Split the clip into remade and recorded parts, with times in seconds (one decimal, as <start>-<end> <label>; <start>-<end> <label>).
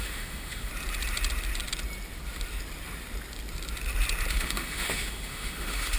0.0-0.7 remade; 0.7-4.3 recorded; 4.3-6.0 remade